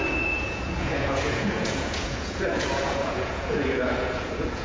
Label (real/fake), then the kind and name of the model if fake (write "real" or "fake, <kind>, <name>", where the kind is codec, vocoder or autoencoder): fake, vocoder, Vocos